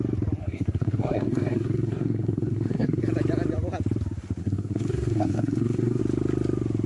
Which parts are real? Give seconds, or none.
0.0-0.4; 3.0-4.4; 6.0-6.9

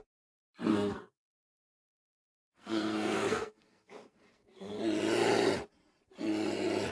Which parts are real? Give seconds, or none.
0.0-0.7; 4.8-6.9

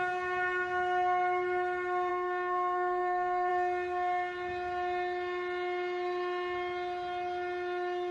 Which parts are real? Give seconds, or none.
0.0-2.1; 3.5-8.1

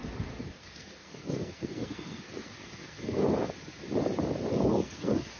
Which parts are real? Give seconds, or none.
0.0-0.5; 3.2-4.5

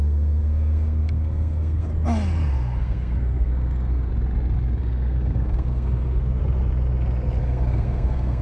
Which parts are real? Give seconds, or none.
1.9-2.5; 4.1-4.8; 6.4-7.4

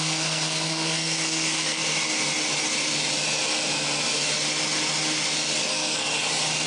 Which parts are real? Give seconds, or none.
1.8-5.6; 6.1-6.7

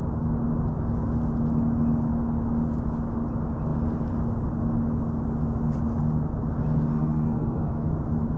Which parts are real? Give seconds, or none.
0.0-6.9; 7.9-8.4

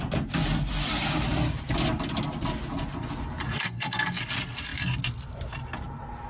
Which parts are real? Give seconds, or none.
0.0-3.5; 4.2-6.3